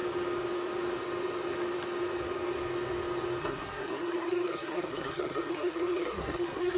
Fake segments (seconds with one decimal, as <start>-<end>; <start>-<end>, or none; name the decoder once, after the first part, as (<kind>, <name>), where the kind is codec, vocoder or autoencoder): 3.4-6.8 (codec, SNAC)